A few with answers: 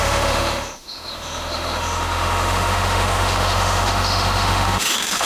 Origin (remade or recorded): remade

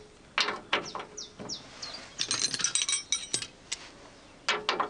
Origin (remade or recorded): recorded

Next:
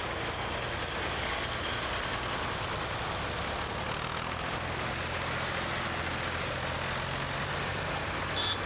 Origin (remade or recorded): recorded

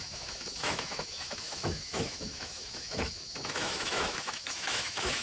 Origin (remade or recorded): remade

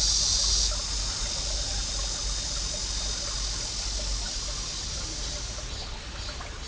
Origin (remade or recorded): recorded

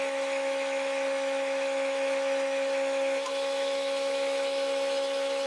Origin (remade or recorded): remade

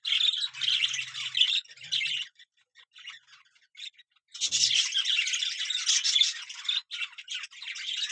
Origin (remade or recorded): recorded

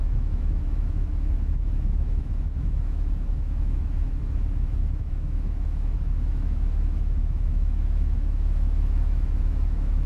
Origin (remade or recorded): remade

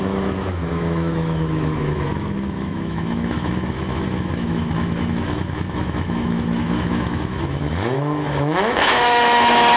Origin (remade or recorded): remade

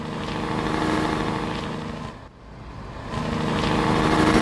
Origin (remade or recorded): recorded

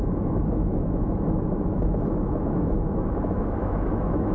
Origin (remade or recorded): remade